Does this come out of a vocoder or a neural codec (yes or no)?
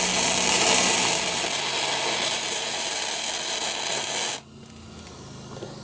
no